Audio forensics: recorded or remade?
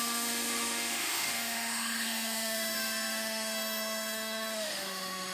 remade